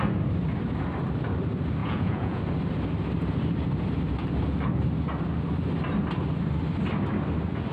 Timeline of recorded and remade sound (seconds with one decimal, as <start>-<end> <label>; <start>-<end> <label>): 0.0-1.8 recorded; 1.8-2.4 remade; 2.4-7.7 recorded